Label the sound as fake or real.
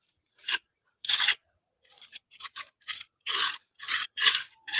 fake